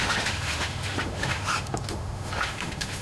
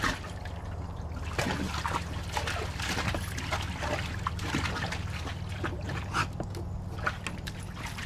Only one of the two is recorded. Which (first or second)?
second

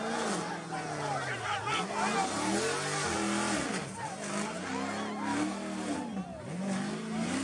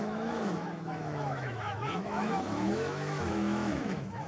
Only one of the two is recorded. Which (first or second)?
first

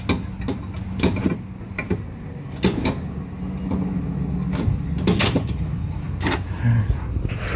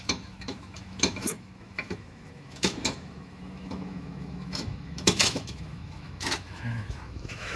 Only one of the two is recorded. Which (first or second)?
first